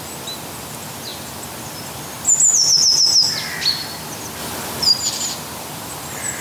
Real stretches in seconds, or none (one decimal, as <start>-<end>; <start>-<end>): 0.0-6.4